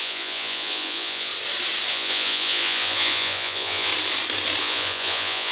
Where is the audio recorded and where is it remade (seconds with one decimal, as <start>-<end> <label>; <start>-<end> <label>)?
0.0-1.3 remade; 1.3-1.9 recorded; 1.9-3.9 remade; 3.9-4.6 recorded; 4.6-5.5 remade